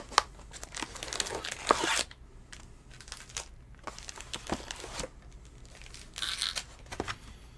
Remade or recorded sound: recorded